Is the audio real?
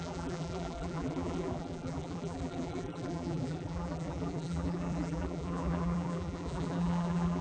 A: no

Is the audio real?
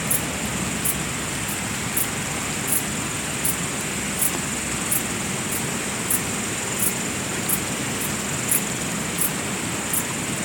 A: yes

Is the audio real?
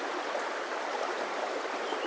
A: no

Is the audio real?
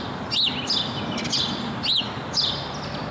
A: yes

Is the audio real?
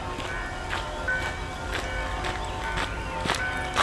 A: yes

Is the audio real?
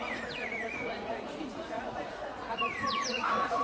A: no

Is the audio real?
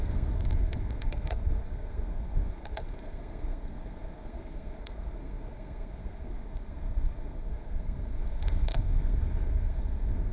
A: no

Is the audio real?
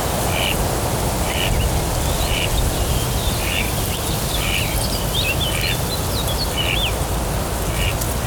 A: yes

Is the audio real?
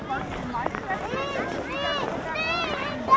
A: yes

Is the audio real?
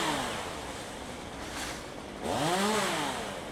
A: yes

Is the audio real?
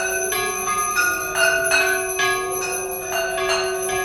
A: yes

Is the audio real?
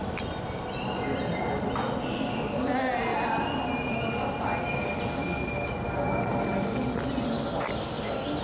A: yes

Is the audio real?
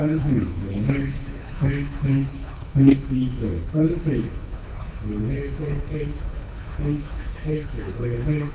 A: no